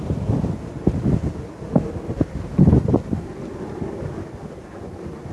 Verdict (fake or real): real